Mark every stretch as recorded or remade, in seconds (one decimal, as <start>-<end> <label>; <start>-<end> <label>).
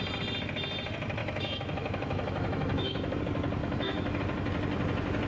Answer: 0.0-1.2 recorded; 1.2-3.2 remade; 3.2-3.6 recorded; 3.6-4.2 remade; 4.2-5.3 recorded